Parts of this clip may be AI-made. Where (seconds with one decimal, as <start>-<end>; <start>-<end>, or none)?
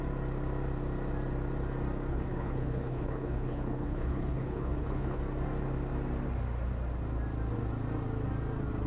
2.1-5.2